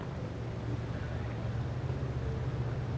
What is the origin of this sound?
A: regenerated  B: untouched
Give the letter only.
B